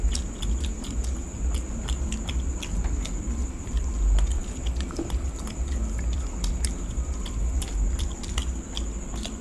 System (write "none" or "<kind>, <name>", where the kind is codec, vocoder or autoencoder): none